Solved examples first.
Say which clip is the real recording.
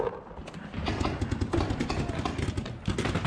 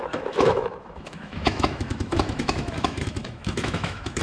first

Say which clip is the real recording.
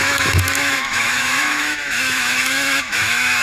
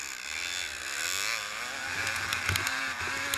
second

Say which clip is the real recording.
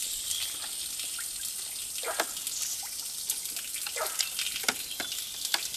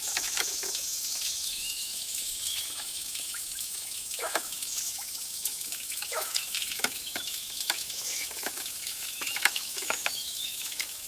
first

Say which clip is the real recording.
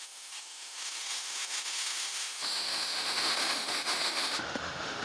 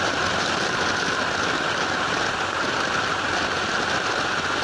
second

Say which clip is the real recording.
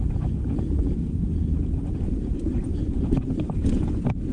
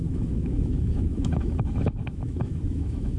first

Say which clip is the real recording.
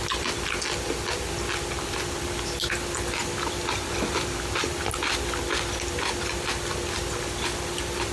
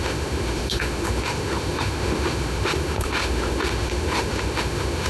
first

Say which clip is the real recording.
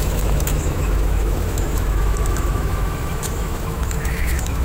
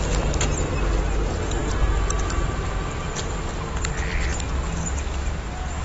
second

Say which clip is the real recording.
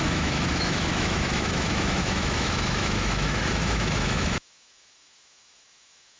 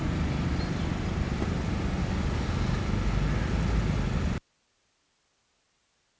second